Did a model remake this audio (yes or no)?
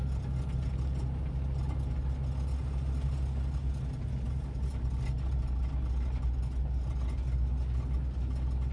no